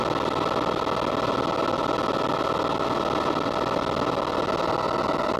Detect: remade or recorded recorded